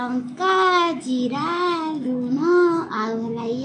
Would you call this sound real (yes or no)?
no